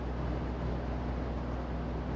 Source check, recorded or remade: recorded